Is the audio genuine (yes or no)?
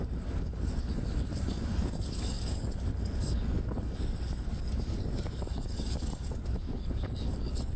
no